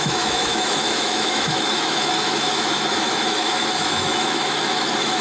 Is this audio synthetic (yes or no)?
yes